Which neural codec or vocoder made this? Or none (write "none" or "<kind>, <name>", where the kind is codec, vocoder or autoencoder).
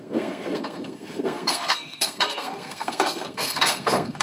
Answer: codec, SNAC